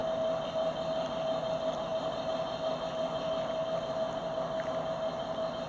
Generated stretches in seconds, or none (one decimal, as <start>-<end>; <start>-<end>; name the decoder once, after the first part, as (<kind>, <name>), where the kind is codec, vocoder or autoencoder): none